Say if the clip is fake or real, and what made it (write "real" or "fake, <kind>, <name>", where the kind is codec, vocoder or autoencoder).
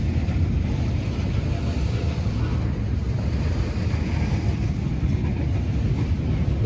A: real